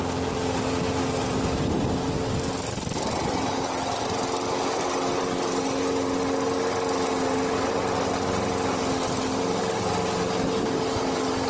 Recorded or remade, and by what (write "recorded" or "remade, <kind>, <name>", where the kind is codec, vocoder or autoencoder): recorded